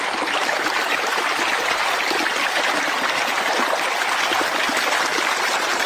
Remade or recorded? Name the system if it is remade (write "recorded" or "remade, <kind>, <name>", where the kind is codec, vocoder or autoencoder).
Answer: recorded